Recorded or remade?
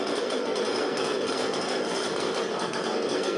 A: remade